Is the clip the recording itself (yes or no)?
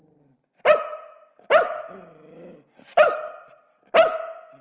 yes